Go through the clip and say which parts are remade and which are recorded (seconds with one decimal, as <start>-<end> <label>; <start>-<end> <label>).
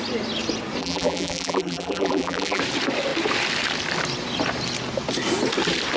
0.0-0.8 recorded; 0.8-2.6 remade; 2.6-6.0 recorded